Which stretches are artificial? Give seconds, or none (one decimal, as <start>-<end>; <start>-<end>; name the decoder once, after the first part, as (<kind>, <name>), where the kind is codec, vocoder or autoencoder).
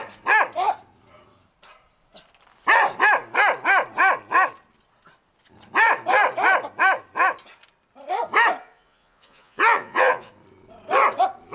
8.6-10.3 (vocoder, Vocos)